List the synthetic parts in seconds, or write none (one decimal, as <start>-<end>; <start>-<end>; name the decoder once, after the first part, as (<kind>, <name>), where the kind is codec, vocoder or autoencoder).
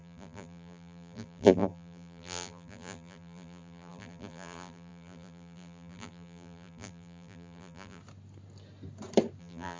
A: 0.0-8.0 (vocoder, BigVGAN v2); 9.4-9.8